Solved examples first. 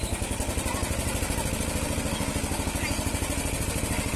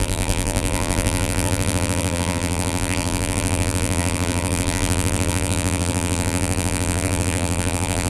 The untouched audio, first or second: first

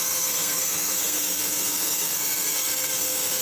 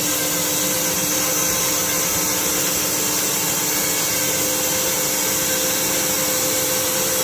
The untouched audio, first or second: second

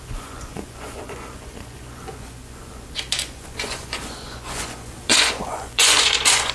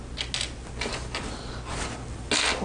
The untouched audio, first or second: second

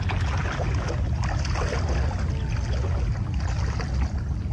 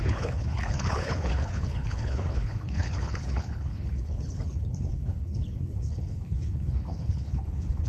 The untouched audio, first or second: first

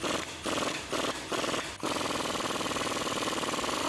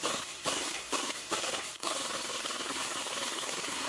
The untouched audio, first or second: first